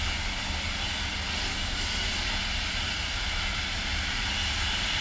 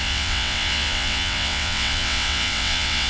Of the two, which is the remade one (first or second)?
second